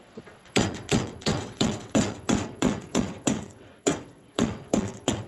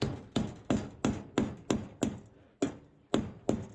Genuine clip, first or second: second